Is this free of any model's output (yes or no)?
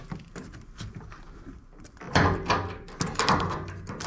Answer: yes